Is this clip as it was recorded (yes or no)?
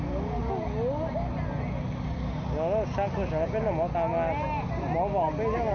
yes